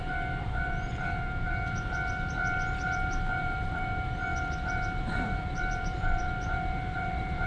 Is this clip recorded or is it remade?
remade